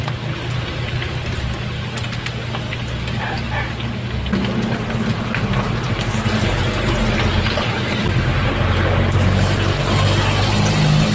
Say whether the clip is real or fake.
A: real